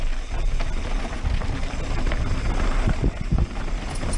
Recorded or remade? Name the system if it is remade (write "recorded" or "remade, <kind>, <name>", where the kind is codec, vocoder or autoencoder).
recorded